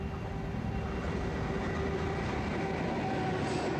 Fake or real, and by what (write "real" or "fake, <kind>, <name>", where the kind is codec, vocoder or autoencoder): real